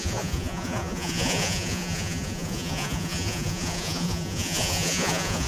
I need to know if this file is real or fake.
fake